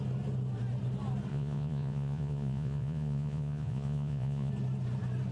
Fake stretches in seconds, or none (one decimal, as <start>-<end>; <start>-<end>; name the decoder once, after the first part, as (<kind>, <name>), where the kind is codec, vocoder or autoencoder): 1.3-4.5 (vocoder, Vocos)